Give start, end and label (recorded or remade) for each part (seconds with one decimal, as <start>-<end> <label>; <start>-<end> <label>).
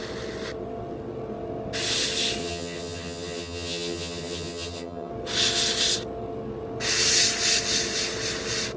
0.0-2.4 recorded; 2.4-5.1 remade; 5.1-8.8 recorded